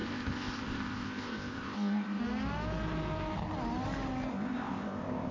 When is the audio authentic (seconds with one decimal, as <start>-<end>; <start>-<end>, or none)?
2.2-4.3